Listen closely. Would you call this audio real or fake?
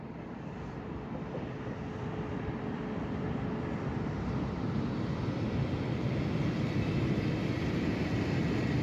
real